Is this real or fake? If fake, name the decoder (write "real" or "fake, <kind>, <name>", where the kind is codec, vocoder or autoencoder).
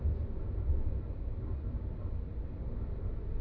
real